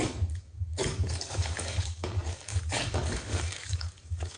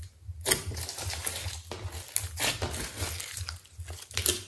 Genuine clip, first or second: second